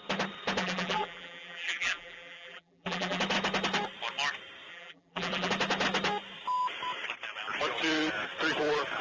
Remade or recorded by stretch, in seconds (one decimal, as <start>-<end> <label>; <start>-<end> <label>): 0.0-0.6 recorded; 0.6-3.2 remade; 3.2-4.7 recorded; 4.7-5.5 remade; 5.5-9.0 recorded